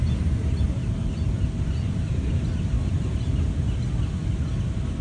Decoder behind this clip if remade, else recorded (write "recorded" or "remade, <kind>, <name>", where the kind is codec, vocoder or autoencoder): recorded